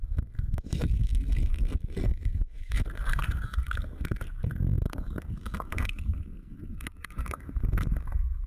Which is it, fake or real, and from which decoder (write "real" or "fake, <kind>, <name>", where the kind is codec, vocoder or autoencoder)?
fake, codec, SNAC